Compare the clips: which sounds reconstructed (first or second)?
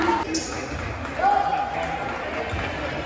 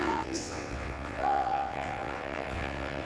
second